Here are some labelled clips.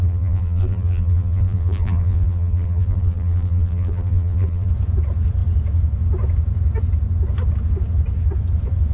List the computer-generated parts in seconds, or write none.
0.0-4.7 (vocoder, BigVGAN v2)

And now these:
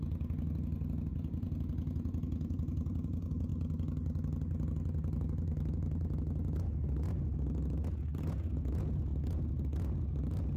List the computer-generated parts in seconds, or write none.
0.0-3.5 (vocoder, Vocos); 8.2-9.1